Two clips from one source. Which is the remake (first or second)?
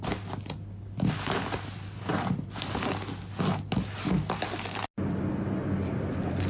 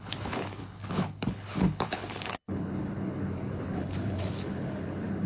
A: second